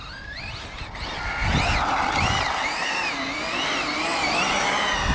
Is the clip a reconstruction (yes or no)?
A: no